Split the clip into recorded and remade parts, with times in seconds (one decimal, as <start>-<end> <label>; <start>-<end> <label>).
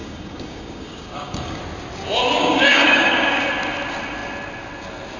0.0-1.6 remade; 1.6-2.4 recorded; 2.4-3.4 remade; 3.4-5.2 recorded